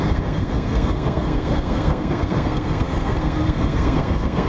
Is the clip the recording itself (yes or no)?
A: no